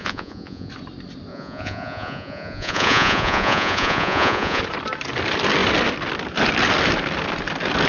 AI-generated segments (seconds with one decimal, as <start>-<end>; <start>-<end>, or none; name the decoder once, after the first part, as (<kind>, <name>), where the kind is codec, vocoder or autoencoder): 0.0-0.7 (vocoder, Vocos); 1.3-4.6